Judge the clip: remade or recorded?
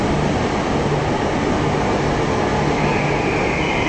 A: recorded